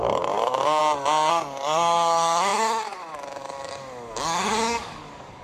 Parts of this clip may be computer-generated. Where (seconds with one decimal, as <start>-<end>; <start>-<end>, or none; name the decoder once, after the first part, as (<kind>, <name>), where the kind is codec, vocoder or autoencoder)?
0.0-0.8 (codec, DAC); 1.3-5.4